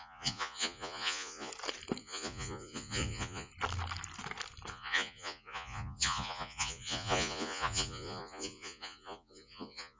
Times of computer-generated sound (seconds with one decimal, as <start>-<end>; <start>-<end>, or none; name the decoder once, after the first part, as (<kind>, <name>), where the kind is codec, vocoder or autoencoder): 0.0-1.5 (vocoder, Vocos); 2.0-3.5; 4.7-10.0